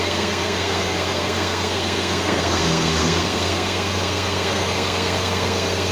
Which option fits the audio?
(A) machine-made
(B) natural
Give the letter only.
A